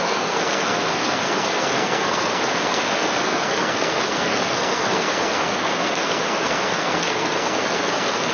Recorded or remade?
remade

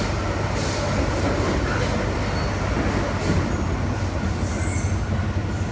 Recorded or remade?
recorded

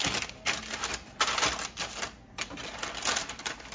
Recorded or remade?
recorded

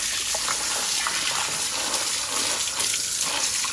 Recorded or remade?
recorded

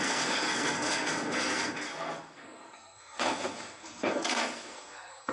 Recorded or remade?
remade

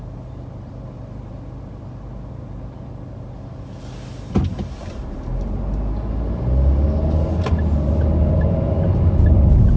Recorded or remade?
recorded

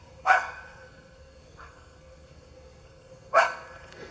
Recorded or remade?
remade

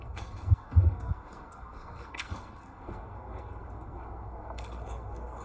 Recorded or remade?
remade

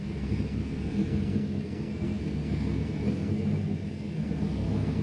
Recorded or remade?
remade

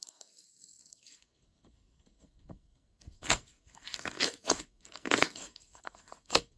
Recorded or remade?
remade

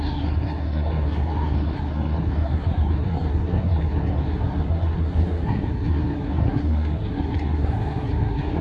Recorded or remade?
remade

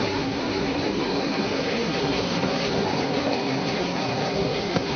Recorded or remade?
remade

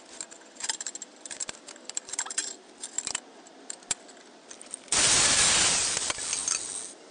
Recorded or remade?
recorded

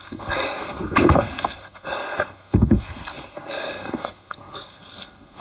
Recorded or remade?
remade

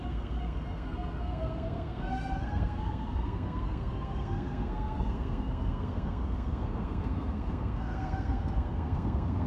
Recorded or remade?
remade